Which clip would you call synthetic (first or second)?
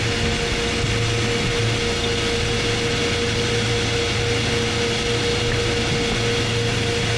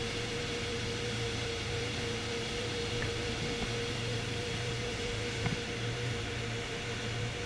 second